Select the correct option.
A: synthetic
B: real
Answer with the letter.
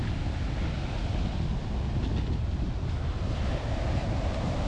B